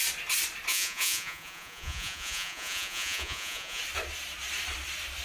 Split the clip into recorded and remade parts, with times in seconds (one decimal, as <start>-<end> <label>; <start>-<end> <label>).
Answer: 0.0-0.7 recorded; 0.7-3.8 remade; 3.8-5.2 recorded